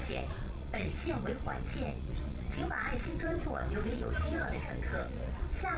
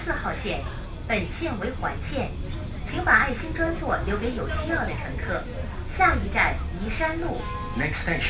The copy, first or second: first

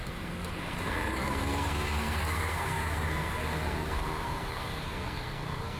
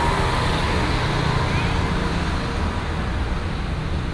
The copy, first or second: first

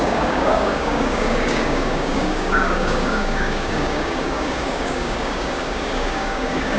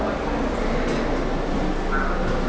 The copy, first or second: first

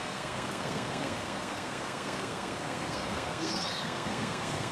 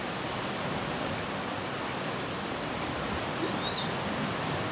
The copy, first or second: first